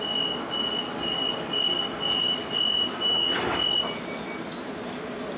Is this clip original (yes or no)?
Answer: yes